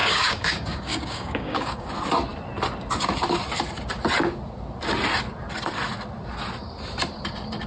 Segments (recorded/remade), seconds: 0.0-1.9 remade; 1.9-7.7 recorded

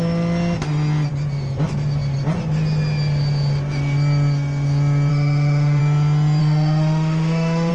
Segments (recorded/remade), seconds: 0.0-5.1 recorded; 5.1-5.8 remade; 5.8-6.4 recorded; 6.4-7.7 remade

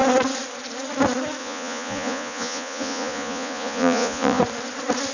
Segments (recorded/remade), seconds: 0.0-1.4 recorded; 1.4-4.4 remade; 4.4-5.1 recorded

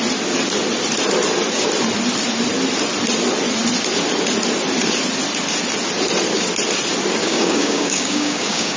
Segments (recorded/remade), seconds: 0.0-7.2 recorded; 7.2-8.8 remade

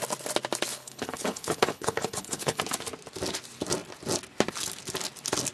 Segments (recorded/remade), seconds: 0.0-0.7 recorded; 0.7-2.6 remade; 2.6-5.5 recorded

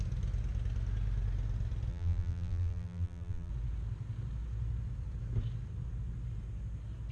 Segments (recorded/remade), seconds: 0.0-1.9 recorded; 1.9-3.5 remade; 3.5-7.1 recorded

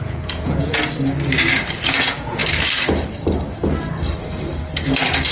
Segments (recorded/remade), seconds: 0.0-0.8 remade; 0.8-2.0 recorded; 2.0-2.4 remade; 2.4-5.3 recorded

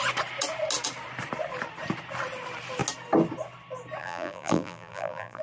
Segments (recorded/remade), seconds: 0.0-4.0 recorded; 4.0-5.4 remade